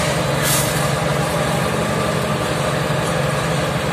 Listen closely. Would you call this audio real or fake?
real